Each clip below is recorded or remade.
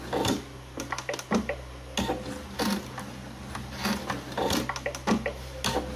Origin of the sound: recorded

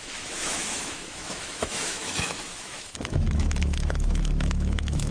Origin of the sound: remade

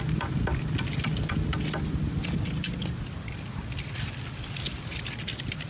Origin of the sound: recorded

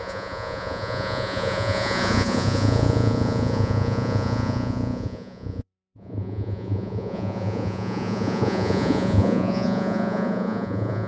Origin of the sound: remade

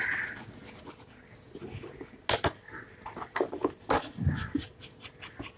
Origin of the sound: recorded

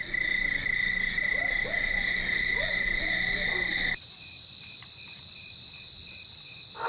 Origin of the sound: recorded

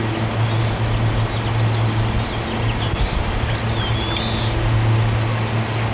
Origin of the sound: recorded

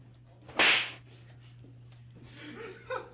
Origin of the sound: recorded